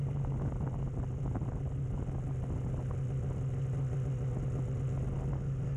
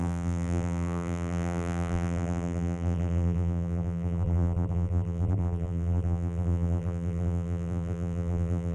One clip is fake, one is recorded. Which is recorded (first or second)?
first